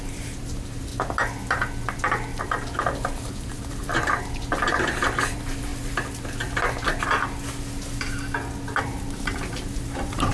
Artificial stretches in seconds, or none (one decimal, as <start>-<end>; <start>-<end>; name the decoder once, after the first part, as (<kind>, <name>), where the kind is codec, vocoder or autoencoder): 0.0-0.9 (vocoder, BigVGAN v2); 2.4-3.9; 4.7-5.7; 8.8-10.3